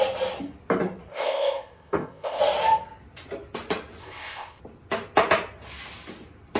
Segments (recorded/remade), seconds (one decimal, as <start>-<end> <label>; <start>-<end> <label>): 0.0-1.1 recorded; 1.1-2.4 remade; 2.4-4.0 recorded; 4.0-4.6 remade; 4.6-6.6 recorded